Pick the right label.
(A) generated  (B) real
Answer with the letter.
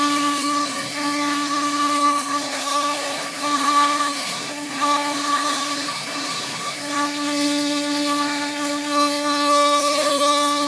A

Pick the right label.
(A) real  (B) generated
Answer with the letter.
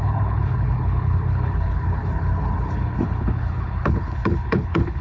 B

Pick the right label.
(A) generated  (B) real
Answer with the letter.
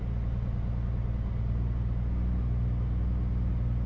B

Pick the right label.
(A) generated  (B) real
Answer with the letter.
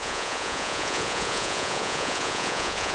A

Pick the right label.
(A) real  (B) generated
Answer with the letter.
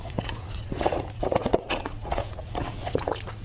B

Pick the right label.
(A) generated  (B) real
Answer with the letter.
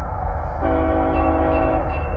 A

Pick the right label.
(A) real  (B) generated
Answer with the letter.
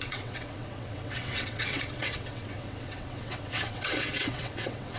B